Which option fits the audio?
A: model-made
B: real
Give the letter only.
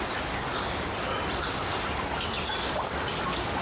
B